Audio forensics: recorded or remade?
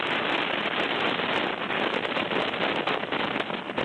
recorded